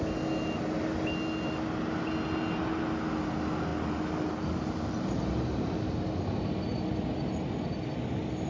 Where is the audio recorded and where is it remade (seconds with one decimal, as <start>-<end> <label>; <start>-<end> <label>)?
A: 0.0-8.5 recorded